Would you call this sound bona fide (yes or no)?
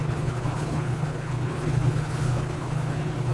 no